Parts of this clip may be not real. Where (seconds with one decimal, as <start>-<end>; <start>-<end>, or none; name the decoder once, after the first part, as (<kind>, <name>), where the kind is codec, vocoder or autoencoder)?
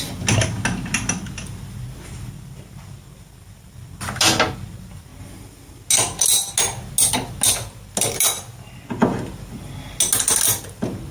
none